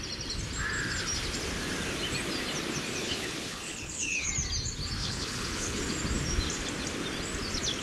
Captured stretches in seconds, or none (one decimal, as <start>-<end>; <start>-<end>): 0.0-3.0; 4.3-5.0; 5.8-7.8